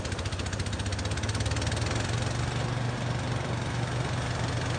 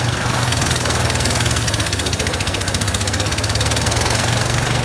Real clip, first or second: first